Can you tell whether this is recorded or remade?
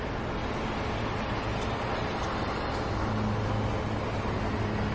recorded